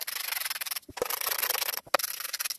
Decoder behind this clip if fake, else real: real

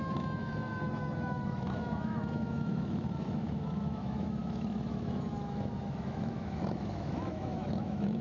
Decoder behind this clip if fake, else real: fake, autoencoder, DAC-VAE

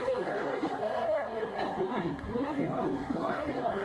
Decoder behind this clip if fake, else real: fake, codec, SNAC